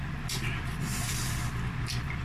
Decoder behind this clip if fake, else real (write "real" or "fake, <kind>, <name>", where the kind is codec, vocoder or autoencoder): fake, vocoder, BigVGAN v2